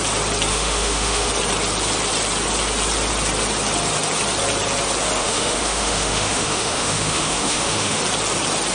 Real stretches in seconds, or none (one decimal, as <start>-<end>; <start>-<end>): 0.0-0.5; 1.3-5.2; 8.0-8.7